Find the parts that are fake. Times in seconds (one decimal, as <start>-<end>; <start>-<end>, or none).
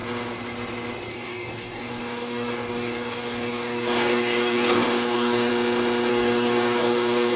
1.1-5.5; 6.1-7.4